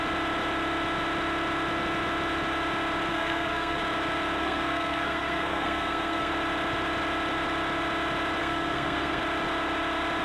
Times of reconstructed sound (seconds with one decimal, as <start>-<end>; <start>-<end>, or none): 3.1-3.8; 4.4-6.3; 8.4-9.2